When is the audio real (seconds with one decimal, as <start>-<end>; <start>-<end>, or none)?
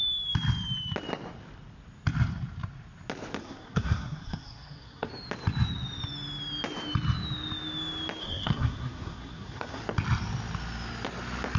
0.0-3.4; 5.1-8.2; 9.8-11.6